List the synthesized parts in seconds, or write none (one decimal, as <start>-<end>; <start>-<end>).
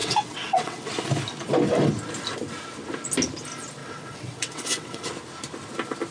0.0-0.9; 3.8-5.1